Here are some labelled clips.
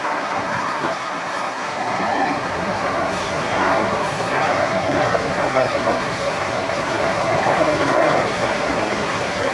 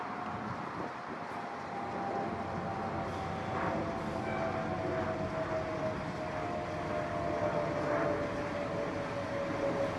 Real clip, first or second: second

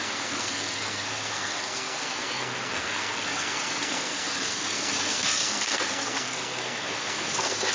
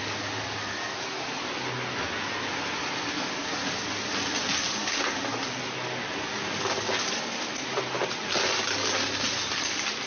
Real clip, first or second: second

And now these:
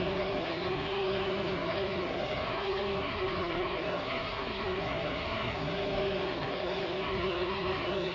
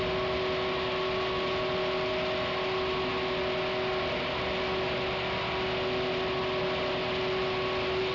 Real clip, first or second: second